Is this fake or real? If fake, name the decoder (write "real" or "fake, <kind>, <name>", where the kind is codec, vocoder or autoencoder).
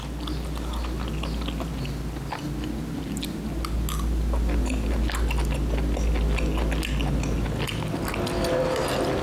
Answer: real